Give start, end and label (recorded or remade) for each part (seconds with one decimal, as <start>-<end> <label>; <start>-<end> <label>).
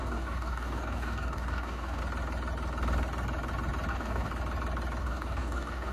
0.0-2.0 remade; 2.0-3.9 recorded; 3.9-4.3 remade; 4.3-5.0 recorded; 5.0-5.9 remade